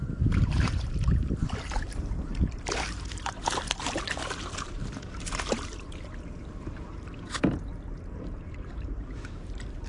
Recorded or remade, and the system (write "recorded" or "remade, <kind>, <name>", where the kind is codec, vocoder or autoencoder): remade, vocoder, BigVGAN v2